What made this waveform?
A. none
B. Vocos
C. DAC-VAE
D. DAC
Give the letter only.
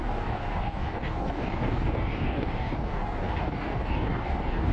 D